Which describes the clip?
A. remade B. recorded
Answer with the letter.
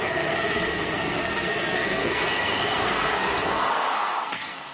A